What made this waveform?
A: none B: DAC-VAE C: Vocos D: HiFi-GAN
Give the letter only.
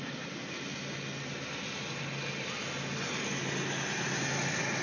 A